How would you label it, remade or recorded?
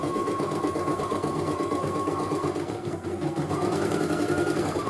remade